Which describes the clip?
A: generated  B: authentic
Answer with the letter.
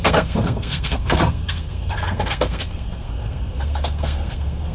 A